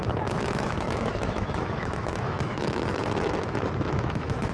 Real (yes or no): no